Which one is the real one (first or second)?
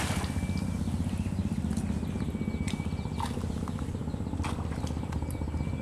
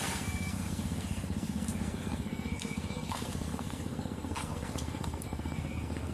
first